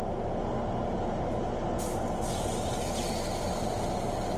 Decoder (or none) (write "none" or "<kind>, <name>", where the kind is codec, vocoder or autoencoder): none